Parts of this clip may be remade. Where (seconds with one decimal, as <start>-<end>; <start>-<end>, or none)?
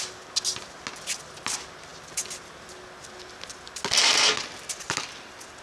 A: none